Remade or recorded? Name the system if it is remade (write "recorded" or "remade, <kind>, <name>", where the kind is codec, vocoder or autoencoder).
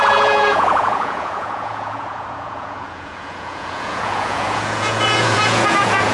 remade, vocoder, Vocos